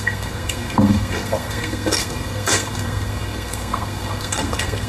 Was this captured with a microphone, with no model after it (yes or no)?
no